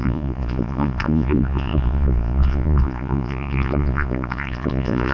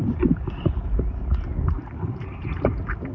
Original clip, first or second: second